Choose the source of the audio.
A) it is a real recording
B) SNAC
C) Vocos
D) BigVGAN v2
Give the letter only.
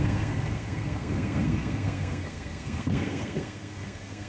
B